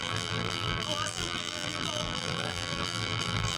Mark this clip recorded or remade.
remade